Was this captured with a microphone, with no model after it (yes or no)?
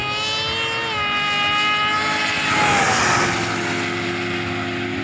yes